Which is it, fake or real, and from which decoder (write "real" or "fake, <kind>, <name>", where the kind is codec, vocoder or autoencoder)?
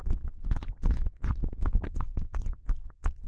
fake, vocoder, WaveNeXt